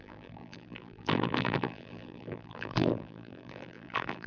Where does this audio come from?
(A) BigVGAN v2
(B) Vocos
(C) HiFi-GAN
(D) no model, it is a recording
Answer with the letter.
A